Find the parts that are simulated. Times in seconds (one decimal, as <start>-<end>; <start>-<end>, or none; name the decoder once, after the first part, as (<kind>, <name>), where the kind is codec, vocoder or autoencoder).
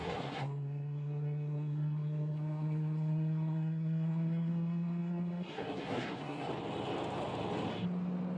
0.0-6.5 (codec, SNAC)